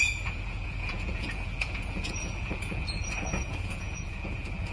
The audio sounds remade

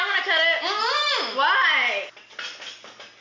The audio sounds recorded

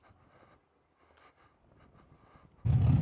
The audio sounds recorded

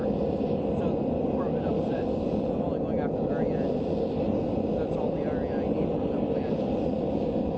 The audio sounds recorded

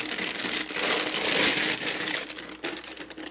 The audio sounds recorded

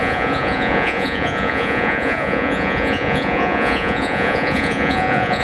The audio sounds remade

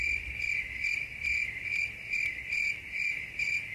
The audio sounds recorded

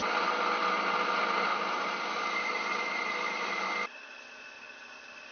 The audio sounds recorded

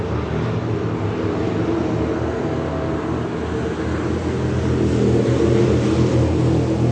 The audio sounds recorded